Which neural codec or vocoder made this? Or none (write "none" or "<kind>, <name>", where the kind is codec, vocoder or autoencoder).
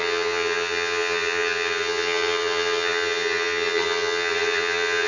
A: vocoder, HiFi-GAN